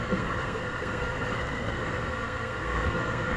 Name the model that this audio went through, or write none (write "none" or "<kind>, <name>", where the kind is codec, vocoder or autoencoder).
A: codec, SNAC